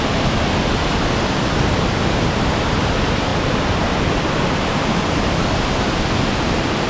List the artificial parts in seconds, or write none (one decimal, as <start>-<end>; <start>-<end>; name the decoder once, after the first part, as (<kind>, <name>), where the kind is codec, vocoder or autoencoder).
none